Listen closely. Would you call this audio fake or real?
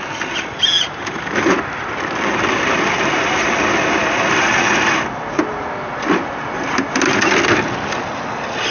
real